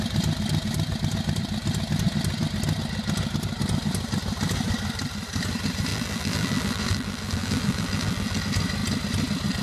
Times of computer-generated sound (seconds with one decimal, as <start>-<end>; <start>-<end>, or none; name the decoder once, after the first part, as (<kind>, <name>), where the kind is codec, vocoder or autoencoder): 5.9-8.4 (vocoder, BigVGAN v2)